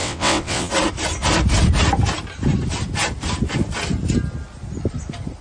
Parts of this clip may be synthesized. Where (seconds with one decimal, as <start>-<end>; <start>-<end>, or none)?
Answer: 0.0-0.7